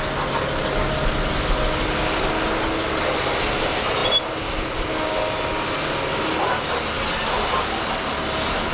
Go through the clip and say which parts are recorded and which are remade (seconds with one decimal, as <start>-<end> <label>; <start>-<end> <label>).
0.0-8.7 recorded